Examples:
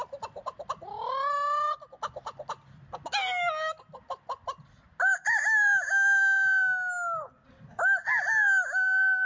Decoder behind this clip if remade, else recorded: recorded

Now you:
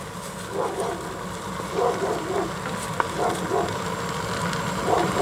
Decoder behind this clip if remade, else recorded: recorded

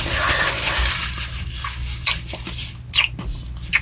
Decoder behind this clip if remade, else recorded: recorded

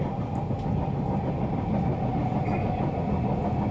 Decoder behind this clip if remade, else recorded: recorded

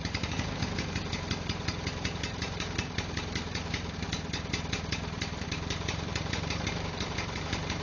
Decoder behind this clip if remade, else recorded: remade, vocoder, BigVGAN v2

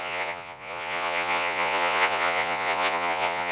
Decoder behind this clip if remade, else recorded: remade, vocoder, Vocos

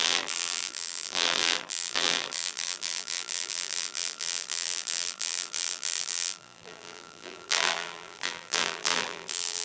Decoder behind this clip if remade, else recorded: remade, vocoder, BigVGAN v2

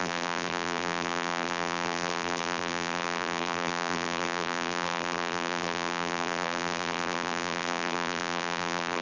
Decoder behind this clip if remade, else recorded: remade, vocoder, BigVGAN v2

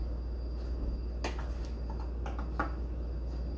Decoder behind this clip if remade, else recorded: recorded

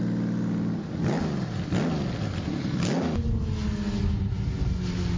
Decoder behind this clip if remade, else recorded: recorded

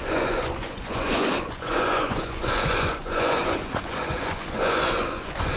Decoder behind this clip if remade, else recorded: remade, vocoder, Vocos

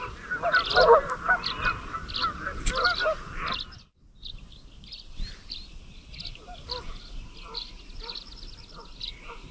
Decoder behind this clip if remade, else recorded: recorded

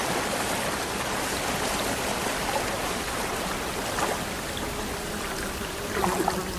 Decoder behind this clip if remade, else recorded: recorded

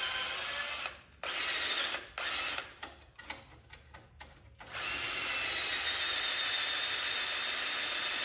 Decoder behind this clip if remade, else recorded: recorded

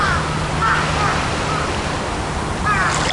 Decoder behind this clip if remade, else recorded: recorded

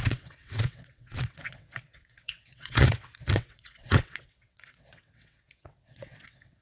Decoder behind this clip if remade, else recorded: remade, vocoder, WaveNeXt